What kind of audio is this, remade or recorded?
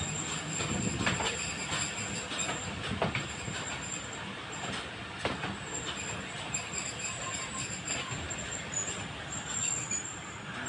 recorded